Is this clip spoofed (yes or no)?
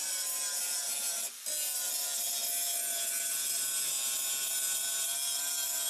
no